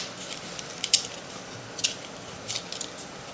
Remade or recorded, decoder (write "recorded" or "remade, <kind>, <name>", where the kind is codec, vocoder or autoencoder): remade, vocoder, BigVGAN v2